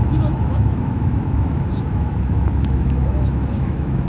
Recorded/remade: remade